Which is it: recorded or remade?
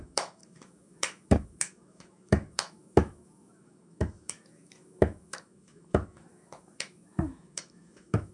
remade